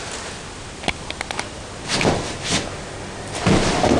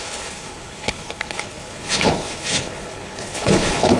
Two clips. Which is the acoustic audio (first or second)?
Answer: first